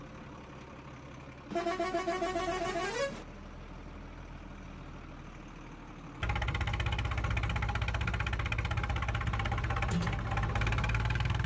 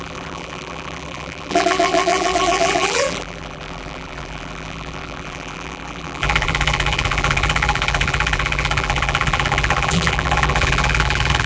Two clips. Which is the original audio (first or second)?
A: first